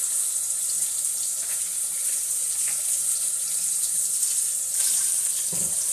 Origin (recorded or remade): remade